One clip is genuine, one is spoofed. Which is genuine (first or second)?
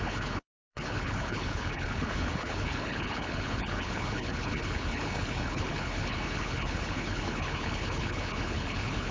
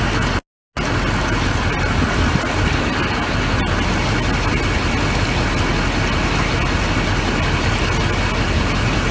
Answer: second